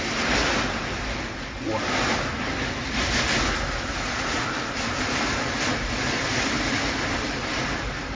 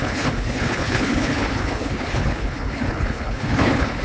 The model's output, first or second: second